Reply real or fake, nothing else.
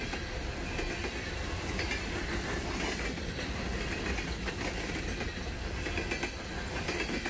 real